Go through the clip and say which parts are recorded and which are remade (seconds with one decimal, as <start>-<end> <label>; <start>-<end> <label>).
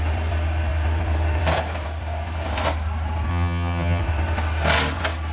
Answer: 0.0-3.3 recorded; 3.3-4.0 remade; 4.0-5.3 recorded